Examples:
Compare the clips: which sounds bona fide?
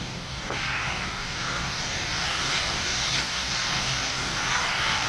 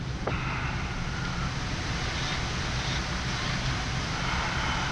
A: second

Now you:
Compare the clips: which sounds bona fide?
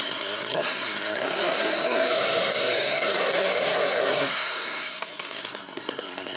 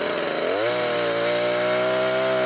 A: second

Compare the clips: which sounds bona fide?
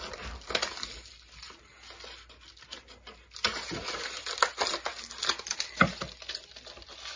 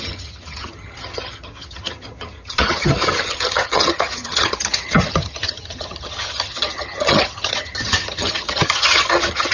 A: first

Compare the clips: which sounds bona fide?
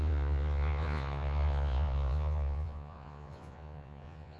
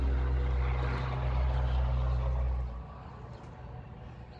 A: second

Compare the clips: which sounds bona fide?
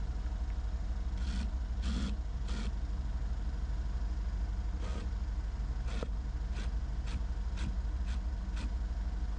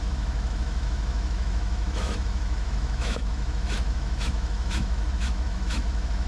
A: first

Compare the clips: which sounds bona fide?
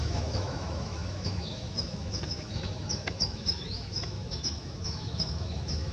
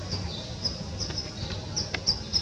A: second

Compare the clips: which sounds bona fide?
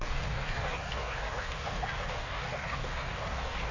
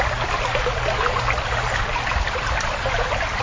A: second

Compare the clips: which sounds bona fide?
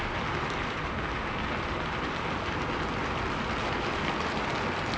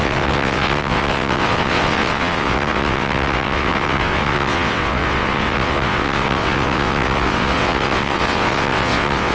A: first